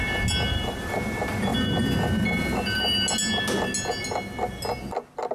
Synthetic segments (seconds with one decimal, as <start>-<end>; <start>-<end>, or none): none